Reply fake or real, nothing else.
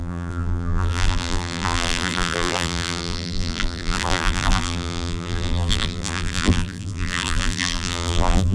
fake